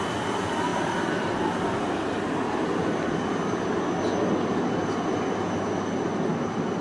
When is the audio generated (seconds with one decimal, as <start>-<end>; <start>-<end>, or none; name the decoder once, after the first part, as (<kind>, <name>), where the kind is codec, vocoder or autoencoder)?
none